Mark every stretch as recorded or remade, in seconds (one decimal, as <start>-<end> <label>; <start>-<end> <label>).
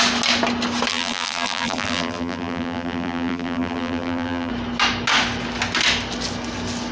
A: 0.0-0.9 recorded; 0.9-4.5 remade; 4.5-6.9 recorded